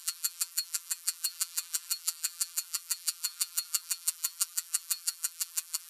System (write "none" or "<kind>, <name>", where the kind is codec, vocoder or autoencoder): vocoder, BigVGAN v2